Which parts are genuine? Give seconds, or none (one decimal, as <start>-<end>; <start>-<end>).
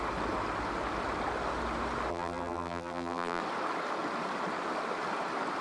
0.0-2.1; 3.4-5.6